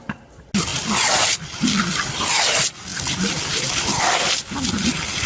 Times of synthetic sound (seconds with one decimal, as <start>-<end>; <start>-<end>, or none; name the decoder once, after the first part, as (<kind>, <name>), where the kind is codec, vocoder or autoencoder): 0.7-2.2 (vocoder, BigVGAN v2); 2.9-3.9